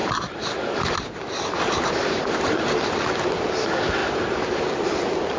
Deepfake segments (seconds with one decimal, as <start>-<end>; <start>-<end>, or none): 0.0-3.0; 4.0-4.6